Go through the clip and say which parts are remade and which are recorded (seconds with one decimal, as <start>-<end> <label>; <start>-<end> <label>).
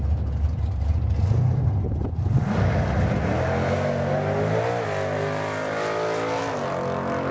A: 0.0-7.3 recorded